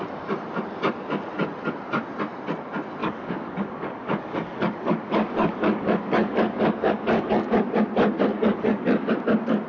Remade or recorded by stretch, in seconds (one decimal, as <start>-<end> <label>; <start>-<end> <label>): 0.0-3.0 recorded; 3.0-7.5 remade; 7.5-8.3 recorded; 8.3-9.1 remade; 9.1-9.7 recorded